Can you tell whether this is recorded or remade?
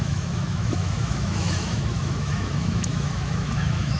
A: remade